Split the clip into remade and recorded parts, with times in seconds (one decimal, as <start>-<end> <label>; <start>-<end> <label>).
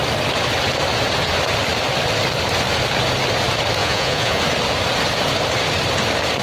0.0-3.8 recorded; 3.8-4.4 remade; 4.4-6.4 recorded